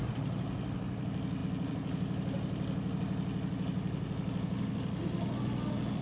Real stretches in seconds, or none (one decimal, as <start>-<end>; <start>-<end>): 0.0-6.0